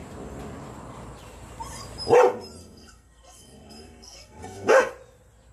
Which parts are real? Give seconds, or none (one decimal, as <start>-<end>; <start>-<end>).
0.0-2.6; 4.9-5.5